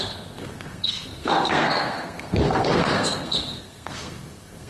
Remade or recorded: remade